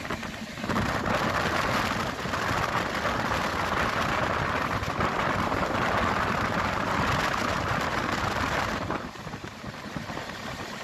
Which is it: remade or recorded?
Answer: recorded